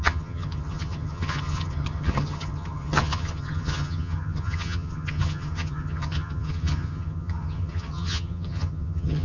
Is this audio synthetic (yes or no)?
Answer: yes